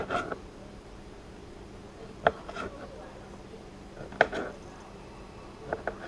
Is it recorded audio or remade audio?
recorded